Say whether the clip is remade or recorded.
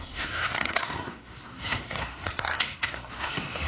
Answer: remade